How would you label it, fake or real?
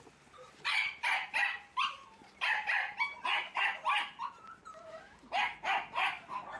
real